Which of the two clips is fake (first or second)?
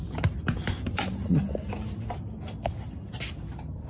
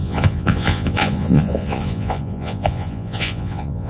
second